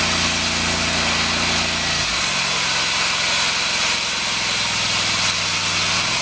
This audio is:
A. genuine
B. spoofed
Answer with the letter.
A